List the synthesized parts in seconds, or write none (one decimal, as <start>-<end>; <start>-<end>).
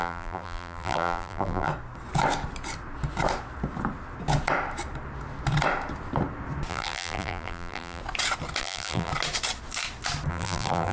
0.0-1.7; 6.7-8.0; 8.6-9.1; 10.3-10.9